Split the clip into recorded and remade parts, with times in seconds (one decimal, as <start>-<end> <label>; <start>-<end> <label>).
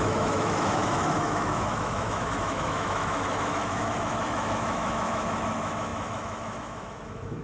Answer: 0.0-7.4 remade